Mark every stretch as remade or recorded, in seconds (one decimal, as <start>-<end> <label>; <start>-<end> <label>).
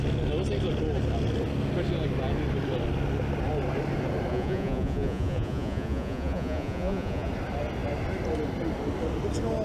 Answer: 0.0-4.3 recorded; 4.3-7.3 remade; 7.3-9.6 recorded